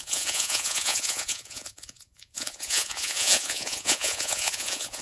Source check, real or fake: fake